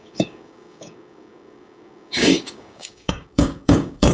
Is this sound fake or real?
fake